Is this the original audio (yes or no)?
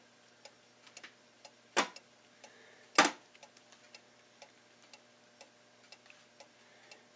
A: yes